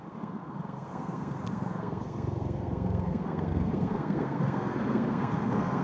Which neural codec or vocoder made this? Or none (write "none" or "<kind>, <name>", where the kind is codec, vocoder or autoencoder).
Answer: codec, SNAC